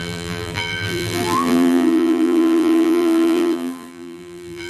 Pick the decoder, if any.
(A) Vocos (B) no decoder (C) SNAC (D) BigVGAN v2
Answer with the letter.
D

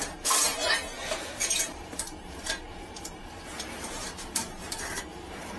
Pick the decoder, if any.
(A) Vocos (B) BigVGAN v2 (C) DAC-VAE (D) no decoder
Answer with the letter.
B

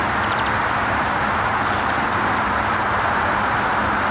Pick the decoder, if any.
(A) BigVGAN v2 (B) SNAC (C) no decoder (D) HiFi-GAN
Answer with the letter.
A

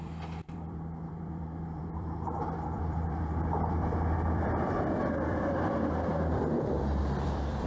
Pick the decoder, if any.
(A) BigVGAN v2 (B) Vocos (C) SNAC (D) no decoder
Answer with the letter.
A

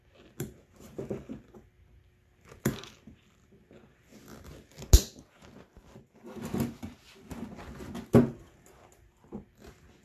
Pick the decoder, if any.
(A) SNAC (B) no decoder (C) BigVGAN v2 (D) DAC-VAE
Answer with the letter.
B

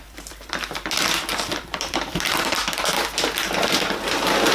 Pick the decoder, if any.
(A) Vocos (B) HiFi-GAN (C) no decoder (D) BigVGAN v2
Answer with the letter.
D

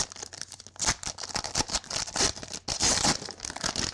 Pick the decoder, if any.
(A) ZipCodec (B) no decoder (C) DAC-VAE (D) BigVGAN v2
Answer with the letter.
B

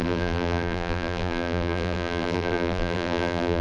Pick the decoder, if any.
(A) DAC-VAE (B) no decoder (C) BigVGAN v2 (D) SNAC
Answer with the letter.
C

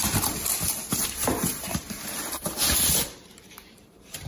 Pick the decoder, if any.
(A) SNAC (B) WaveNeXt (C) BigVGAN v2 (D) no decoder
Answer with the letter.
C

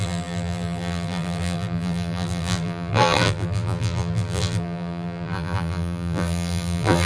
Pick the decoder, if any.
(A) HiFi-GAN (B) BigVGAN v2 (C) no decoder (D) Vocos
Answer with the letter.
B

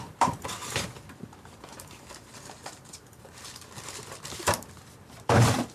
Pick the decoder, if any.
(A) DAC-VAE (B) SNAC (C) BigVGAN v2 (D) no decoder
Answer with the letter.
C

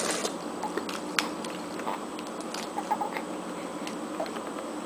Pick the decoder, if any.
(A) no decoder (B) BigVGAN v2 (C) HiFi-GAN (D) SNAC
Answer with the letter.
A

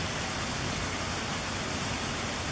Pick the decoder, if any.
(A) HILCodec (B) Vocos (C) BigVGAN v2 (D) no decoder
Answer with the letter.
C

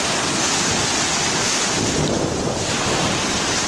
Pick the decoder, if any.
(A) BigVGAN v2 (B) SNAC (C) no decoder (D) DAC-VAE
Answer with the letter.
C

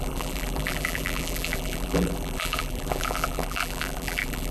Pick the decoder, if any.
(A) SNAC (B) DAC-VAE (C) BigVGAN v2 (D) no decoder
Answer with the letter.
C